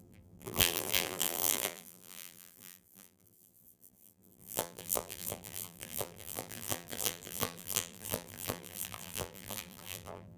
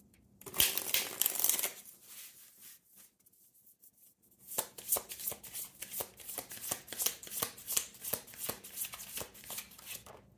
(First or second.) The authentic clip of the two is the second